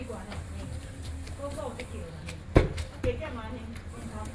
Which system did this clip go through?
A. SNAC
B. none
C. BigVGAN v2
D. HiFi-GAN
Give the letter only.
B